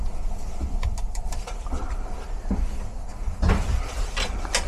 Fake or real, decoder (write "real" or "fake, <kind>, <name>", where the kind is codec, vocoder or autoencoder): real